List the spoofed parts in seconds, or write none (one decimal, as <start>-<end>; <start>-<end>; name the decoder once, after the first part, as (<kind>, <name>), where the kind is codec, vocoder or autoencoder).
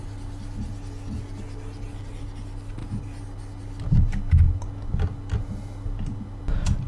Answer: none